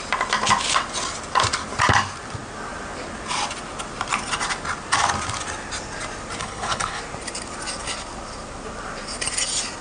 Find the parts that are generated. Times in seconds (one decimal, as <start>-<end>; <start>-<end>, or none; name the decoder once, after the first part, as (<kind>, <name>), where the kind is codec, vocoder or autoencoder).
6.4-7.0 (codec, HILCodec)